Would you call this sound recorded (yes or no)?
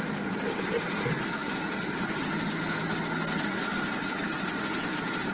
yes